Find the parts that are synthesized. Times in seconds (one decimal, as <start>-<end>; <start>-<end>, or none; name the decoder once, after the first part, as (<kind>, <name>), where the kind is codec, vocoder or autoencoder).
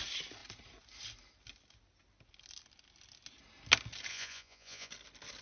4.1-4.9 (vocoder, Vocos)